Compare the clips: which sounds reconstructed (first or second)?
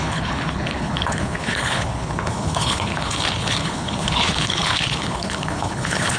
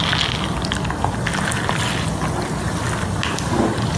first